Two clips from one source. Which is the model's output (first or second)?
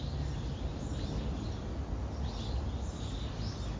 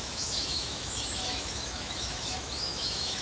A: second